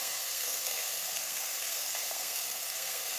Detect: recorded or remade remade